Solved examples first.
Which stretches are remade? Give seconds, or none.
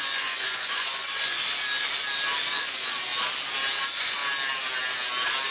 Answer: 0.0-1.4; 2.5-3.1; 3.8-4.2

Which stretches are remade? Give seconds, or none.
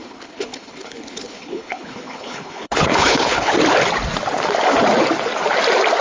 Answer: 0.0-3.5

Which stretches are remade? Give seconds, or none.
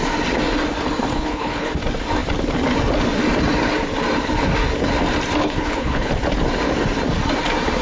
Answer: 1.1-1.7; 5.4-6.1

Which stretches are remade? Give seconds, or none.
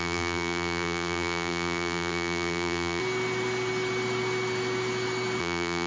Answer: 0.0-3.0; 5.4-5.9